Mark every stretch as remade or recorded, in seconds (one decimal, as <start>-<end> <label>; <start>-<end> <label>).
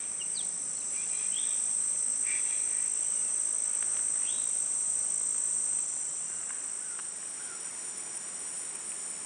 0.0-9.3 recorded